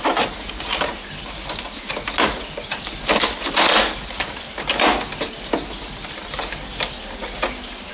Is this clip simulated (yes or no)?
no